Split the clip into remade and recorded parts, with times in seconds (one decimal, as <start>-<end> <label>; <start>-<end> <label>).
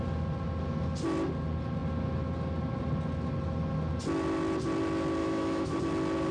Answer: 0.0-5.2 recorded; 5.2-5.8 remade; 5.8-6.3 recorded